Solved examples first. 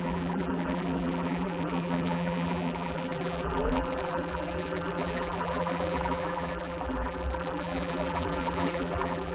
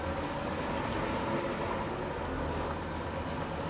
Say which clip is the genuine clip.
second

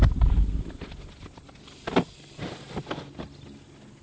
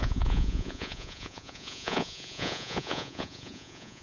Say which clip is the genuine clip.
first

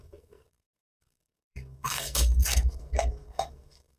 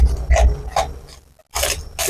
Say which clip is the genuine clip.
second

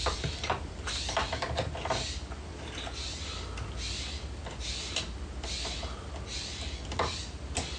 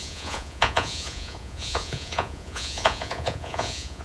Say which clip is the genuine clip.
first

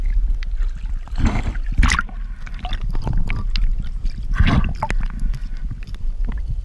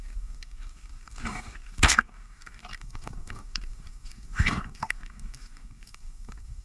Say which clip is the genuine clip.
first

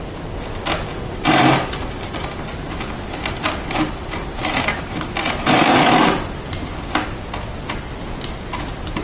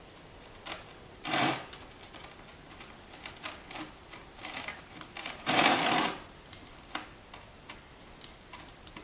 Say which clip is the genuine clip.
first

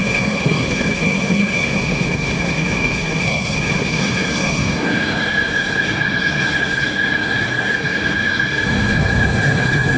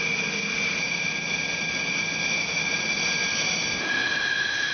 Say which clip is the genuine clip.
second